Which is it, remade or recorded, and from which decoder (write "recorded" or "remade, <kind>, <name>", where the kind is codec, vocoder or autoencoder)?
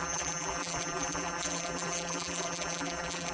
remade, vocoder, BigVGAN v2